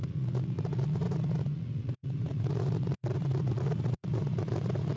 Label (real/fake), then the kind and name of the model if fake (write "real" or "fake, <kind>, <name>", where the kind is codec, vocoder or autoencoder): fake, vocoder, Vocos